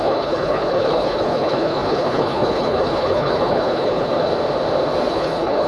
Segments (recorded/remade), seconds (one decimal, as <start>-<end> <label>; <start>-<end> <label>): 0.0-4.3 remade; 4.3-5.1 recorded; 5.1-5.7 remade